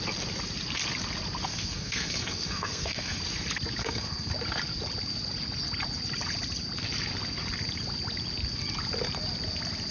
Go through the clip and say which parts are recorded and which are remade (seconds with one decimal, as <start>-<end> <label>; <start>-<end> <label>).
0.0-1.5 recorded; 1.5-3.2 remade; 3.2-3.8 recorded; 3.8-4.3 remade; 4.3-9.9 recorded